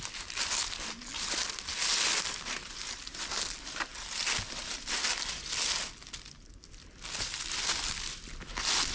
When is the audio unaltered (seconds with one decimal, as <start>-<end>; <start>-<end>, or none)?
0.0-8.9